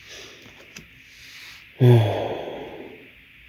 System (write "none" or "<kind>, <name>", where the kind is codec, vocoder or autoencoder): none